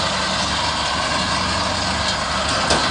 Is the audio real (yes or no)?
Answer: yes